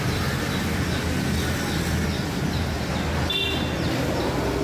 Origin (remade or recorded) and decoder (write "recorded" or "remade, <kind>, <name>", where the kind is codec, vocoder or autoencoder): recorded